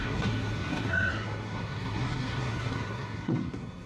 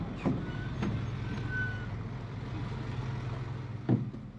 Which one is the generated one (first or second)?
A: first